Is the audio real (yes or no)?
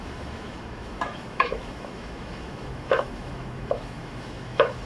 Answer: no